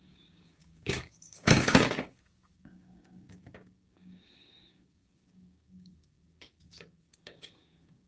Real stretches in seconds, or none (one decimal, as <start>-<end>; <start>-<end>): none